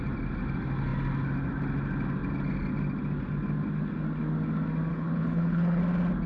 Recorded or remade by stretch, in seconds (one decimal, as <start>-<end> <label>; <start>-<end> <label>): 0.0-4.9 recorded; 4.9-5.8 remade; 5.8-6.3 recorded